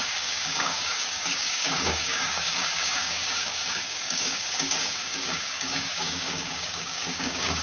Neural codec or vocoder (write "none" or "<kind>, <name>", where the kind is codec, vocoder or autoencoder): codec, DAC